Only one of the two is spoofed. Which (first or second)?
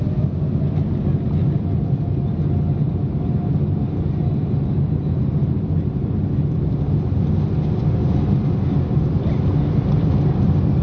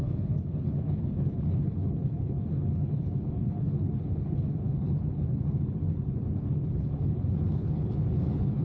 second